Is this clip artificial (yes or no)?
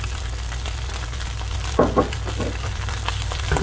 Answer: no